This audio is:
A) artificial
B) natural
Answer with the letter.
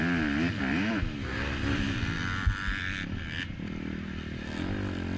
B